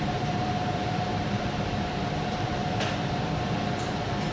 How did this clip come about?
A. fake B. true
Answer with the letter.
A